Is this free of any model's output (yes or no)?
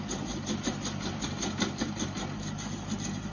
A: yes